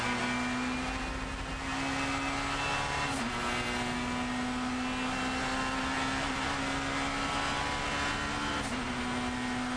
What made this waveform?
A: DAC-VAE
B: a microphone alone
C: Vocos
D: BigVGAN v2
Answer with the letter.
B